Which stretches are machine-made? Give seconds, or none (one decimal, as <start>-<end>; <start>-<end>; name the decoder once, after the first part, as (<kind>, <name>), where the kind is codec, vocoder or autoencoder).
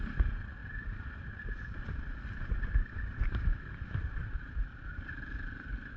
0.6-4.2 (vocoder, BigVGAN v2); 4.7-5.2